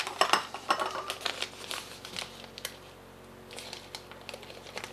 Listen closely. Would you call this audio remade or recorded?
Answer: recorded